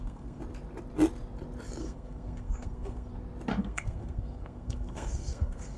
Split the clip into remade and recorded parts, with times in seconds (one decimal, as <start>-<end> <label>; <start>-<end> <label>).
0.0-0.4 remade; 0.4-1.8 recorded; 1.8-3.1 remade; 3.1-3.6 recorded; 3.6-5.8 remade